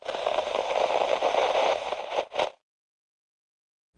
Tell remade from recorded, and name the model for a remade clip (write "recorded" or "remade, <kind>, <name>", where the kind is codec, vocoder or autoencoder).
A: remade, vocoder, BigVGAN v2